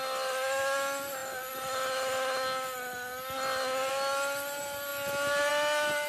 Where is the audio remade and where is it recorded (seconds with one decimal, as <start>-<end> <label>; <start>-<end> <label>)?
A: 0.0-6.1 recorded